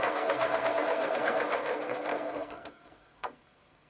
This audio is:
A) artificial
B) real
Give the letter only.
A